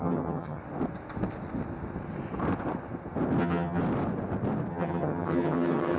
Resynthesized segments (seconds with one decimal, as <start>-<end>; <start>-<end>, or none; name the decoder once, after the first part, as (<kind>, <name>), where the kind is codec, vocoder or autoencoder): 0.0-0.6 (vocoder, HiFi-GAN); 3.4-3.8; 4.7-6.0